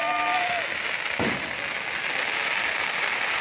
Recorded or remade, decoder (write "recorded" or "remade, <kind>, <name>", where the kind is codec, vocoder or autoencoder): recorded